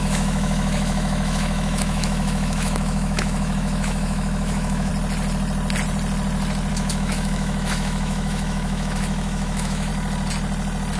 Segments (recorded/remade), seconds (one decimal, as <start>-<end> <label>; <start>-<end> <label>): 0.0-4.9 remade; 4.9-6.7 recorded; 6.7-9.9 remade; 9.9-11.0 recorded